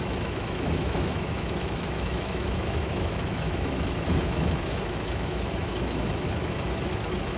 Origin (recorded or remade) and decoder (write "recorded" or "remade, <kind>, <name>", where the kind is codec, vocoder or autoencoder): remade, autoencoder, DAC-VAE